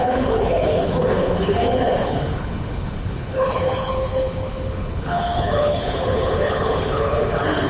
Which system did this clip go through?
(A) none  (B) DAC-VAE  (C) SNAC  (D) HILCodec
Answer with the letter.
D